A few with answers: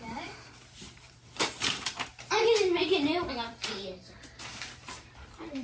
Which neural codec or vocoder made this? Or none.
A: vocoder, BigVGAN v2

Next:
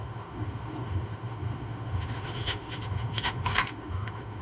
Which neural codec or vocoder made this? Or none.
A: autoencoder, DAC-VAE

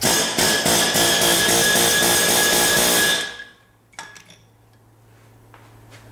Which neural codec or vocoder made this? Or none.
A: none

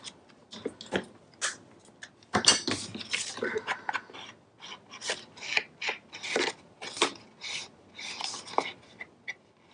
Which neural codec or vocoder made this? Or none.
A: none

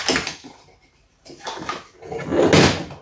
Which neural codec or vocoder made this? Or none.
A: none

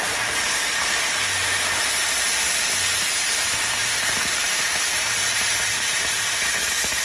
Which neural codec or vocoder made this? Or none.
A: vocoder, BigVGAN v2